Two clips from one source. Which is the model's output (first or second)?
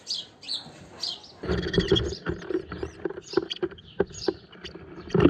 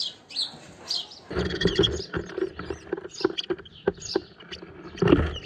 first